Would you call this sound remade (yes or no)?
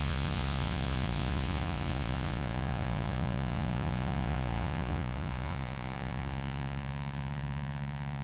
yes